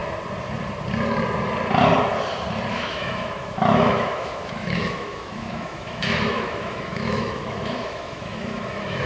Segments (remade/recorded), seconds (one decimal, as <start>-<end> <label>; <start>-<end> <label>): 0.0-2.7 recorded; 2.7-9.1 remade